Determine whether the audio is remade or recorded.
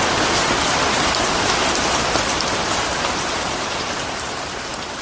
recorded